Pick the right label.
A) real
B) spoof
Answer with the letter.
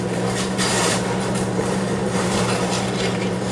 B